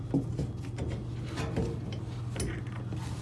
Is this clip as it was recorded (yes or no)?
yes